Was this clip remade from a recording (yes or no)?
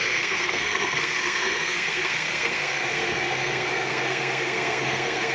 yes